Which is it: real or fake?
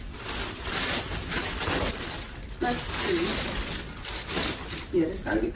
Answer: real